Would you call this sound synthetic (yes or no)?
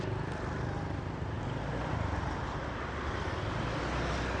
no